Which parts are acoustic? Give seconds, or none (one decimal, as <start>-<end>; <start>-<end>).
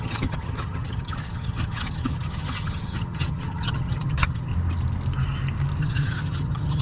4.5-5.8